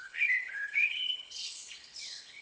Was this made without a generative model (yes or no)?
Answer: no